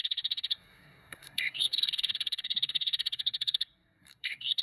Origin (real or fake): fake